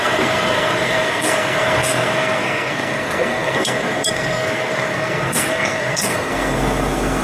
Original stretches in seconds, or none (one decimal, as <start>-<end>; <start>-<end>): none